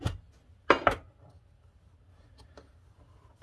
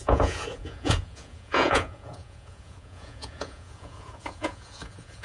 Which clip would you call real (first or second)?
first